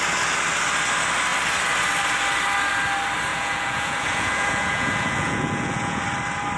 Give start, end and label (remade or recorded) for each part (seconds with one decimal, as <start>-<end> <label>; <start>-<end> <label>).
0.0-3.3 recorded; 3.3-6.0 remade; 6.0-6.6 recorded